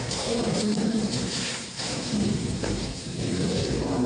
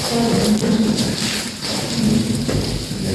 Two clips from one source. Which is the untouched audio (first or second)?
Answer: second